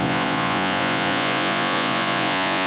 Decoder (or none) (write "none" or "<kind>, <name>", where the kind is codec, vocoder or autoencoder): vocoder, Vocos